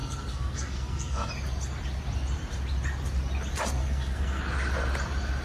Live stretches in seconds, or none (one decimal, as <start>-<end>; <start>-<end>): 1.3-3.8; 4.4-5.4